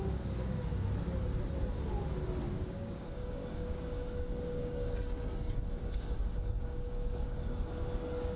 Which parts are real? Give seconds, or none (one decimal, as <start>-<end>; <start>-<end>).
0.7-2.5